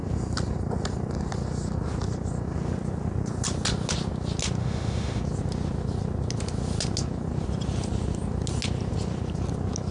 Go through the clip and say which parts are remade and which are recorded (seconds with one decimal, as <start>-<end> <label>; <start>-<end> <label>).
0.0-4.6 recorded; 4.6-5.2 remade; 5.2-9.9 recorded